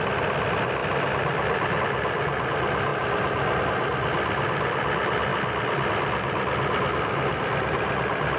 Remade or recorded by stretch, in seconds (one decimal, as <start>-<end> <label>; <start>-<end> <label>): 0.0-0.8 recorded; 0.8-1.8 remade; 1.8-2.9 recorded; 2.9-3.6 remade; 3.6-5.3 recorded; 5.3-5.9 remade; 5.9-8.4 recorded

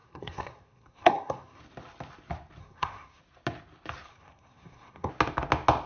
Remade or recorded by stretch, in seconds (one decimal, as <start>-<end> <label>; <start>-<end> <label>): 0.0-1.6 remade; 1.6-2.6 recorded; 2.6-3.2 remade; 3.2-4.1 recorded; 4.1-5.1 remade; 5.1-5.9 recorded

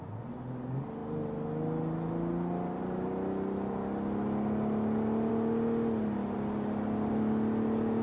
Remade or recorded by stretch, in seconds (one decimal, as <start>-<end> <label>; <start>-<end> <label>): 0.0-8.0 recorded

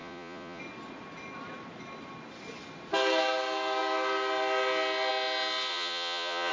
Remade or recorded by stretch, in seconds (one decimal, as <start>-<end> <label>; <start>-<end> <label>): 0.0-0.6 remade; 0.6-5.7 recorded; 5.7-6.5 remade

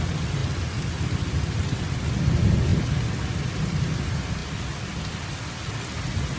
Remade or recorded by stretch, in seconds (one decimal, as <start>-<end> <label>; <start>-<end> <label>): 0.0-6.4 recorded

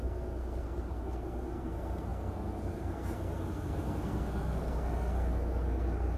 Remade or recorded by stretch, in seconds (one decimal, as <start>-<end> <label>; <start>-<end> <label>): 0.0-6.2 remade

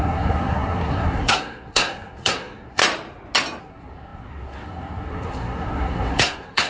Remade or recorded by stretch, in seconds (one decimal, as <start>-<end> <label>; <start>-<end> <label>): 0.0-2.8 remade; 2.8-3.6 recorded; 3.6-6.7 remade

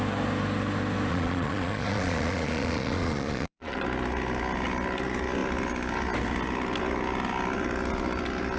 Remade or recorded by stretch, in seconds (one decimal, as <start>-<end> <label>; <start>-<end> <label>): 0.0-1.1 recorded; 1.1-3.8 remade; 3.8-8.6 recorded